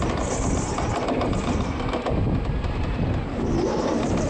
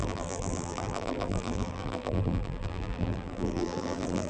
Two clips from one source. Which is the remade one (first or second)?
second